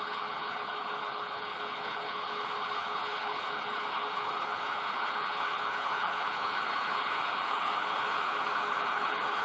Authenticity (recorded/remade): remade